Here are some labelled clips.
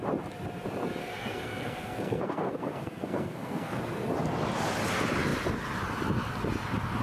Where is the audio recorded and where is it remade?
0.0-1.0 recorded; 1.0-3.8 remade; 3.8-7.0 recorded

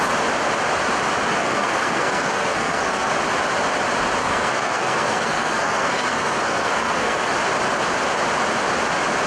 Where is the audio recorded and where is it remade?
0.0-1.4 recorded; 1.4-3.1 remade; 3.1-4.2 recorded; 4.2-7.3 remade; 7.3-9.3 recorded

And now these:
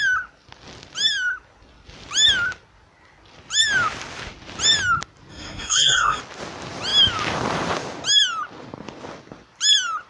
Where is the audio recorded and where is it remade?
0.0-5.3 recorded; 5.3-6.2 remade; 6.2-10.1 recorded

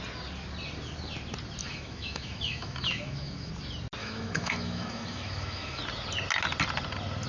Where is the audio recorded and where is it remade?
0.0-1.6 recorded; 1.6-3.5 remade; 3.5-4.0 recorded; 4.0-5.8 remade; 5.8-7.3 recorded

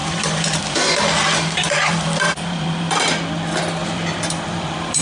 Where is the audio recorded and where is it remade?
0.0-3.0 remade; 3.0-3.8 recorded; 3.8-5.0 remade

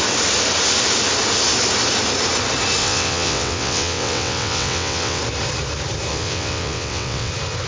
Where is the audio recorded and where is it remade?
0.0-2.8 recorded; 2.8-5.2 remade; 5.2-6.1 recorded; 6.1-7.3 remade; 7.3-7.7 recorded